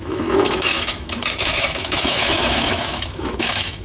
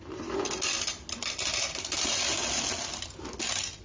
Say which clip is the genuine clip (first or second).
second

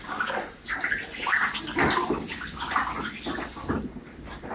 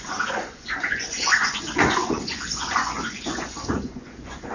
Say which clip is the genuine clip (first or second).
first